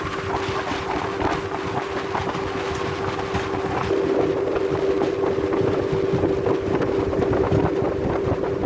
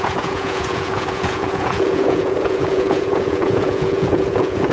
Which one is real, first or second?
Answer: first